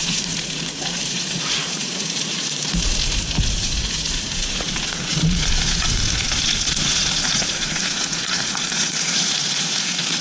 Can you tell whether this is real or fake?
fake